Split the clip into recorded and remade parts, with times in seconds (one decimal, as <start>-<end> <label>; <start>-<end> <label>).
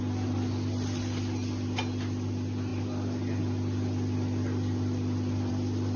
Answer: 0.0-6.0 recorded